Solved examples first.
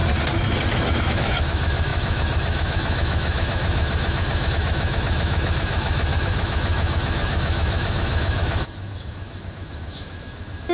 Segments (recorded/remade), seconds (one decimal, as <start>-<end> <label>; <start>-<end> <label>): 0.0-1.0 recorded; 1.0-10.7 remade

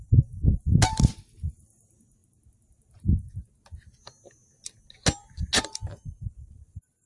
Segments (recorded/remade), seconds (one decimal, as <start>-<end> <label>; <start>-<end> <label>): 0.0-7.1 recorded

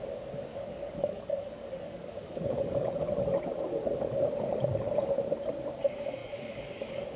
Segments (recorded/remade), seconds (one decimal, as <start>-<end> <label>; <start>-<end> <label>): 0.0-0.5 recorded; 0.5-2.9 remade; 2.9-6.2 recorded; 6.2-7.2 remade

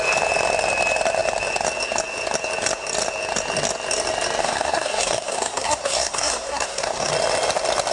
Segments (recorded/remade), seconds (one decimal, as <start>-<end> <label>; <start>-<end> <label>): 0.0-4.4 recorded; 4.4-7.1 remade; 7.1-7.9 recorded

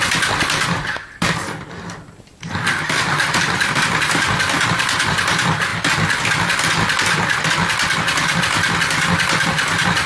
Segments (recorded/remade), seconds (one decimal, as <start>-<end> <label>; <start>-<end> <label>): 0.0-5.7 remade; 5.7-8.4 recorded; 8.4-10.1 remade